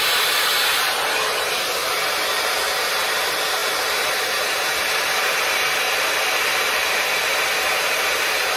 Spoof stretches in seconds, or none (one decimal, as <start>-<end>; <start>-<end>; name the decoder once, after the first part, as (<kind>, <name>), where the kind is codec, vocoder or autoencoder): 0.0-8.6 (vocoder, BigVGAN v2)